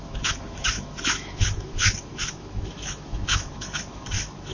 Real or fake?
fake